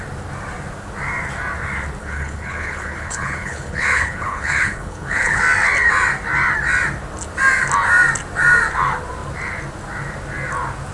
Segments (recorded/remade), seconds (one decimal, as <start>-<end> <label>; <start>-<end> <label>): 0.0-2.0 recorded; 2.0-5.4 remade; 5.4-10.9 recorded